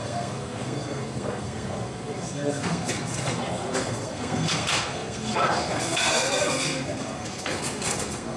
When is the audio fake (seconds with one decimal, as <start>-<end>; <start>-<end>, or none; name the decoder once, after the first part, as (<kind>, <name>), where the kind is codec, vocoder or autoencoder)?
0.0-8.4 (codec, SNAC)

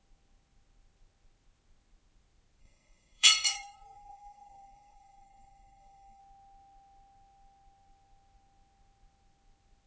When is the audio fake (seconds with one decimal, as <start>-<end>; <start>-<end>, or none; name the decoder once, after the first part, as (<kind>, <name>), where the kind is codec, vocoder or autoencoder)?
2.6-6.2 (codec, SNAC)

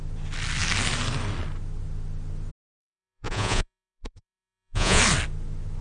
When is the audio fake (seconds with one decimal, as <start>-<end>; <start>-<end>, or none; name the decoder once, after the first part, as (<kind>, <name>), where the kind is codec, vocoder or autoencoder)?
2.5-5.0 (vocoder, Vocos)

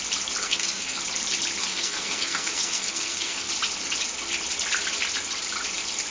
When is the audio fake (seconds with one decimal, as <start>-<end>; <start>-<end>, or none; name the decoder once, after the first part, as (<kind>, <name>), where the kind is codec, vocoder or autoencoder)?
0.4-1.0 (codec, SNAC); 1.6-3.5

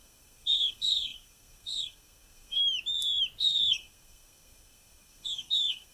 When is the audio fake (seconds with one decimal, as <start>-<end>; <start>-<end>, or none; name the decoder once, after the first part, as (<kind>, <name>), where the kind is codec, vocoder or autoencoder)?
0.0-2.6 (codec, SNAC); 3.4-5.9